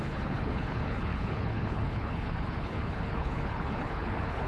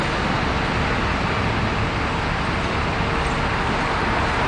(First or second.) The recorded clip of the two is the second